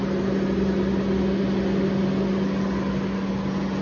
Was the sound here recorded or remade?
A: recorded